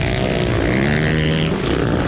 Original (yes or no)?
yes